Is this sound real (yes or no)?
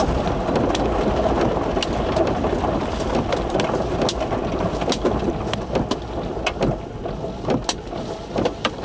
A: yes